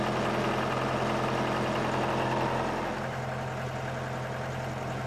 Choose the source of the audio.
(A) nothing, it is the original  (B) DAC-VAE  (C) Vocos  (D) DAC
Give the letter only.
A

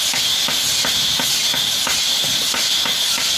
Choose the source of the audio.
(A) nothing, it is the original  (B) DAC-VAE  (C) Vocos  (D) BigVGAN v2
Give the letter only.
A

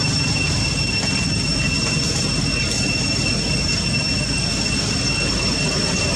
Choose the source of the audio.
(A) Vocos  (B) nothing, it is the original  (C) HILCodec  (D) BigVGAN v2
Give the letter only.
B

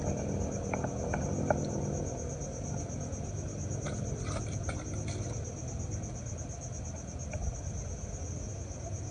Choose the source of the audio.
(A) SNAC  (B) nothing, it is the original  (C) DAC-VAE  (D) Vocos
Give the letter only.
B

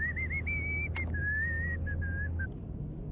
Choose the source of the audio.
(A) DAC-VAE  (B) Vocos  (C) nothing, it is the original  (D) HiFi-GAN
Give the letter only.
C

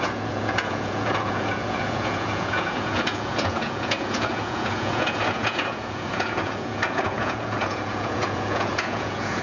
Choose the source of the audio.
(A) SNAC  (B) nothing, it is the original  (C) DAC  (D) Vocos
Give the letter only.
D